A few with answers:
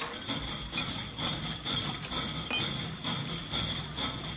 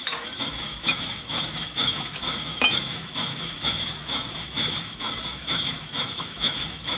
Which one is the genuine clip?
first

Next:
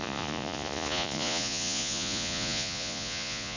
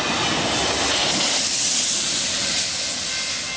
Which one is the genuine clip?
second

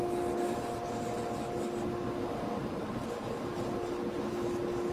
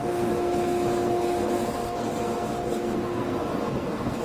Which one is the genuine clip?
first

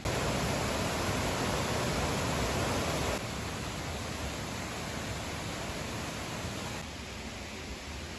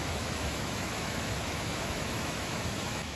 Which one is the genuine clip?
first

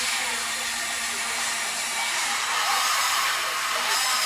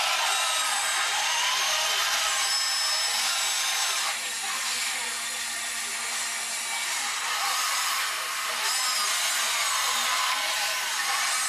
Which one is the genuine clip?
second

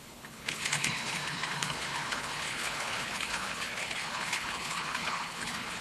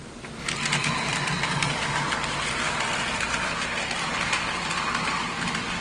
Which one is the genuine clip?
second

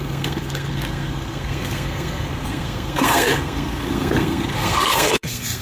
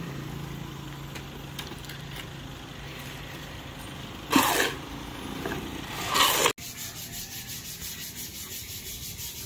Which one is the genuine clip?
second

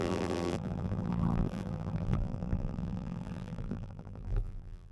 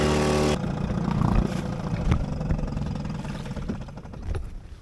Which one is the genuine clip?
second